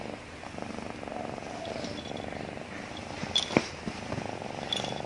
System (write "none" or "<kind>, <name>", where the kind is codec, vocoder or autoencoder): none